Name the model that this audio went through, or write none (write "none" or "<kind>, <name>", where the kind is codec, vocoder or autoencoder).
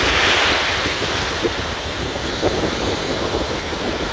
none